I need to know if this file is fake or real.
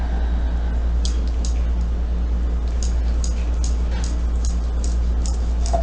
real